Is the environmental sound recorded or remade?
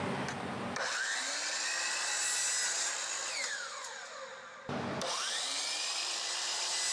recorded